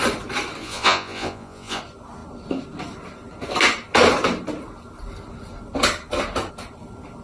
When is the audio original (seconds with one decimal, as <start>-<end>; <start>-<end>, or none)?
0.0-0.6; 1.8-7.2